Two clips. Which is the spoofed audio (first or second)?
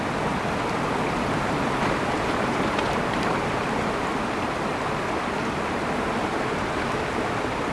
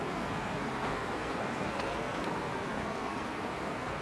second